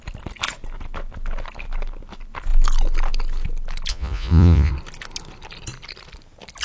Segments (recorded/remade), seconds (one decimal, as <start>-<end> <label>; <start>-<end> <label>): 0.0-3.9 recorded; 3.9-4.7 remade; 4.7-6.6 recorded